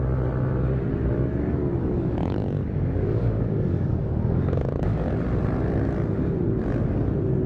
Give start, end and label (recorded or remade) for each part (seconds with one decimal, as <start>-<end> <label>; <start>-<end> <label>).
0.0-1.8 recorded; 1.8-5.1 remade; 5.1-7.5 recorded